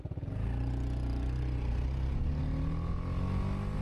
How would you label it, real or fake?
real